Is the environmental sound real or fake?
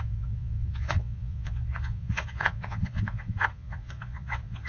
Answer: fake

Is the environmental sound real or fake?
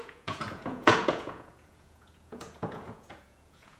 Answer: fake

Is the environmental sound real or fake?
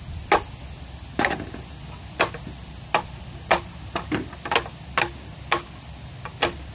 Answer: real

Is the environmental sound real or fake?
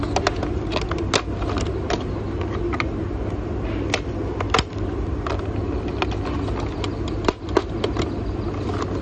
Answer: real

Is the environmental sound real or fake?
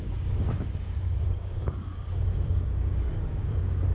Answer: fake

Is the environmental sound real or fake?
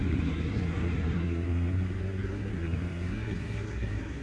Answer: fake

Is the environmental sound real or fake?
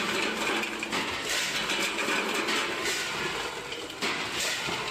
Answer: real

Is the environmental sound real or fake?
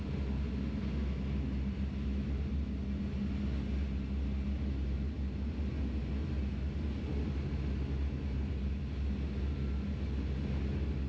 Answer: real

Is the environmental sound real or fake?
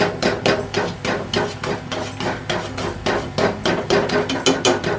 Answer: real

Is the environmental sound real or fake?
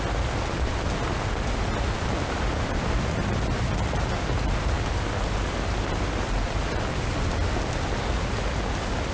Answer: real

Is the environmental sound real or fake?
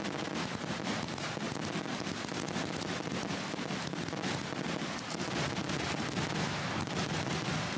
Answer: real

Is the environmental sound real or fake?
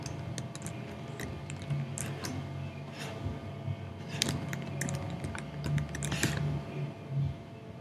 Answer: real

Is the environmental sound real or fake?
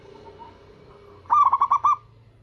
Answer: real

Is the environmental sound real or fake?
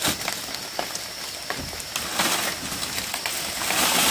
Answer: real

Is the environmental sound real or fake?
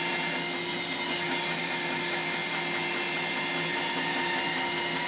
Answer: real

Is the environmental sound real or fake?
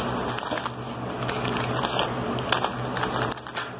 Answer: real